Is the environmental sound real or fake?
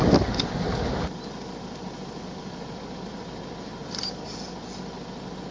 real